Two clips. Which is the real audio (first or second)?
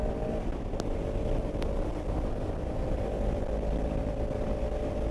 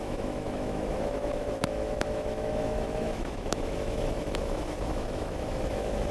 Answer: first